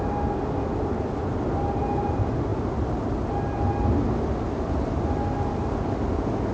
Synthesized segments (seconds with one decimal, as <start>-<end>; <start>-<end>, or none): none